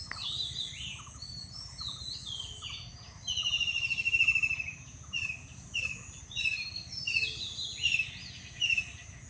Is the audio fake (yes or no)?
no